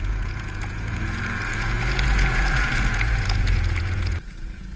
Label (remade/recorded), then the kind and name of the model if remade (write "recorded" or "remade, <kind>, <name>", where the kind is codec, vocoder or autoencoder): remade, vocoder, Vocos